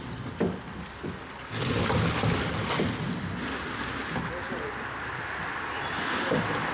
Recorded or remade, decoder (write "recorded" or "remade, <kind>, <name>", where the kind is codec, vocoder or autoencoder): recorded